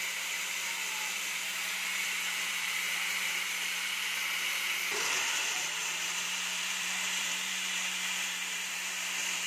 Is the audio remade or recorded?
remade